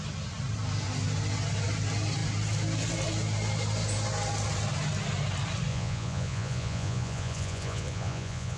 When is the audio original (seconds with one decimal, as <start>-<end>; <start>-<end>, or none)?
0.0-5.7